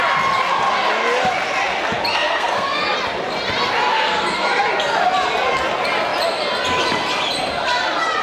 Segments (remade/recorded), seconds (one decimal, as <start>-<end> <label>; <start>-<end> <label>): 0.0-2.1 recorded; 2.1-2.8 remade; 2.8-3.9 recorded; 3.9-4.6 remade; 4.6-8.2 recorded

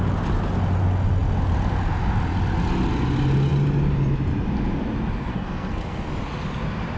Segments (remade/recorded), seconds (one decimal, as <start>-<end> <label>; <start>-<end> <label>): 0.0-5.3 recorded; 5.3-6.1 remade; 6.1-7.0 recorded

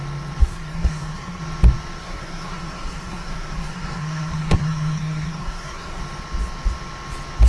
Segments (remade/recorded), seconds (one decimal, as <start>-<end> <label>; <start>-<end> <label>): 0.0-0.4 recorded; 0.4-1.4 remade; 1.4-2.0 recorded; 2.0-6.0 remade; 6.0-7.5 recorded

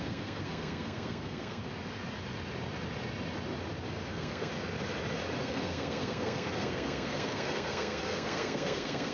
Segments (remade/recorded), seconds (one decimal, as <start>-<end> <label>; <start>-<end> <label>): 0.0-1.6 remade; 1.6-4.1 recorded; 4.1-4.5 remade; 4.5-5.4 recorded; 5.4-9.1 remade